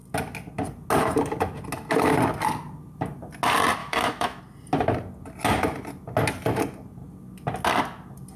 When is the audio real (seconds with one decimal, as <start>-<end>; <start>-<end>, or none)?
0.0-3.8; 4.4-8.4